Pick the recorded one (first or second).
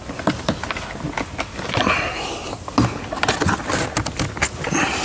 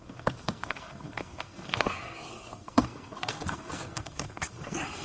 first